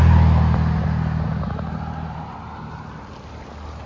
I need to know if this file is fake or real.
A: real